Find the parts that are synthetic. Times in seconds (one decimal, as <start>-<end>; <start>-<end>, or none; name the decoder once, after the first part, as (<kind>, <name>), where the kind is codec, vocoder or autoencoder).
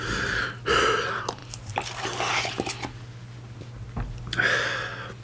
none